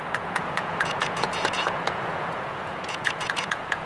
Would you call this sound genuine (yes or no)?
no